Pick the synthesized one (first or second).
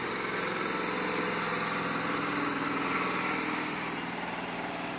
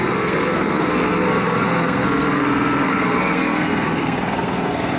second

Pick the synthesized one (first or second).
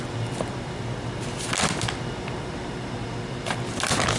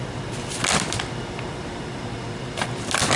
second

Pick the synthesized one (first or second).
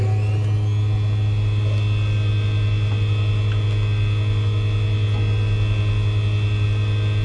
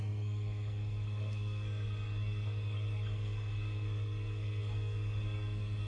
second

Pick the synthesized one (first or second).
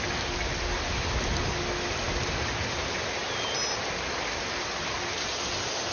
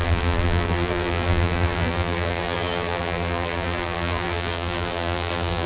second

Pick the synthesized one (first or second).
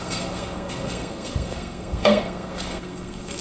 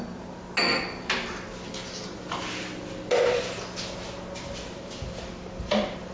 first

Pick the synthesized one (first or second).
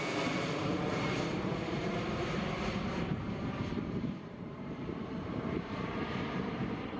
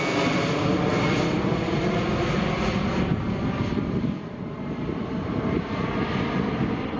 first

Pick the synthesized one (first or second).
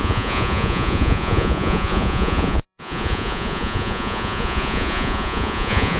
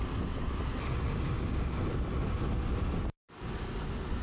first